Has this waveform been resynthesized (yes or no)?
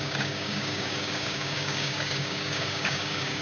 yes